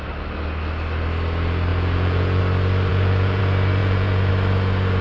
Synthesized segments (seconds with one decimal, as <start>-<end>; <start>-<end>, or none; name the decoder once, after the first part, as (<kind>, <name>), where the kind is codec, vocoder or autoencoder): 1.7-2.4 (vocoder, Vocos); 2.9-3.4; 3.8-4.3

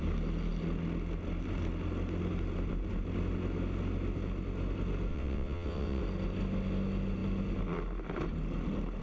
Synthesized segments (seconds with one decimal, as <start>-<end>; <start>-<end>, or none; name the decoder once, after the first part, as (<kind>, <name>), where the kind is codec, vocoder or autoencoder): 5.1-6.0 (vocoder, WaveNeXt)

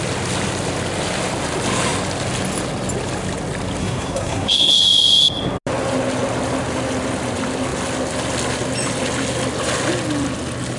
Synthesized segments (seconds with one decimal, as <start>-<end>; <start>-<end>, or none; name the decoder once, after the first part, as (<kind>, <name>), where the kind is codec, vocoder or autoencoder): 3.8-4.7 (codec, SNAC)

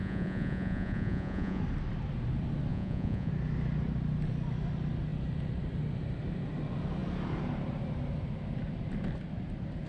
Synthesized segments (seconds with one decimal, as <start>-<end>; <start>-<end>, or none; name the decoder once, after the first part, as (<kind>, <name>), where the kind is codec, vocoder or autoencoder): 0.0-1.6 (vocoder, Vocos); 2.7-3.3

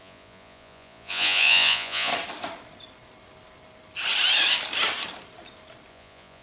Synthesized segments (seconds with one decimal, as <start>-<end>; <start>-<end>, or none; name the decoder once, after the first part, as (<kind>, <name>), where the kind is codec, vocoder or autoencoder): 0.0-2.1 (vocoder, Vocos); 5.9-6.4

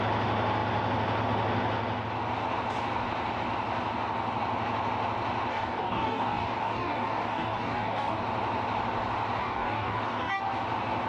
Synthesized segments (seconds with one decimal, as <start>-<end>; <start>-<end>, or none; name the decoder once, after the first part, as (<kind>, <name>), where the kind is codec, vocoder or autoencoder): 5.5-8.2 (codec, DAC); 9.4-10.4

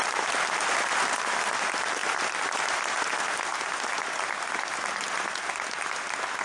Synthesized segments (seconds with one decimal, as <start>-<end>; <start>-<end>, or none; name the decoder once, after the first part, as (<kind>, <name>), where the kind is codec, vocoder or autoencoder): none